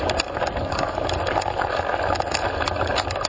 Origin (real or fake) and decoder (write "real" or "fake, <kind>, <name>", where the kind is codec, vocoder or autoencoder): real